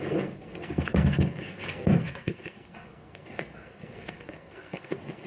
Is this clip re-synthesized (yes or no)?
yes